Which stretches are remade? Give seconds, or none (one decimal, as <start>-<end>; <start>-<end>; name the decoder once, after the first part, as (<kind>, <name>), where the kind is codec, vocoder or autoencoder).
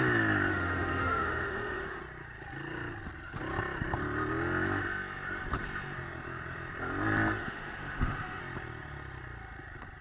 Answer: 0.5-2.0 (autoencoder, DAC-VAE); 7.4-8.4